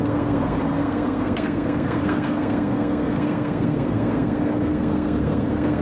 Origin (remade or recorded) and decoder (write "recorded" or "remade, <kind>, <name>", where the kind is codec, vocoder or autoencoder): remade, codec, SNAC